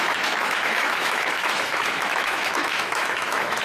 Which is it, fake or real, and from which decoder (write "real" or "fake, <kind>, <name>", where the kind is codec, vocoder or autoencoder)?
fake, autoencoder, DAC-VAE